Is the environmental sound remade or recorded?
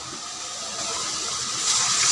recorded